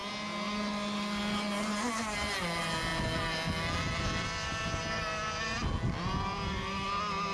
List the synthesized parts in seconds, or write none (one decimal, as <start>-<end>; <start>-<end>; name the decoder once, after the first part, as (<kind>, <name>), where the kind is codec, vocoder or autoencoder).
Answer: none